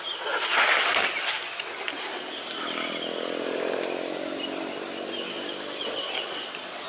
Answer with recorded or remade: recorded